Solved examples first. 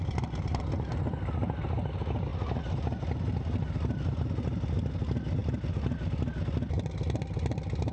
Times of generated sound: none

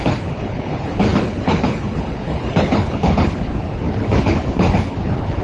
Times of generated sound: 0.0-5.4 (codec, HILCodec)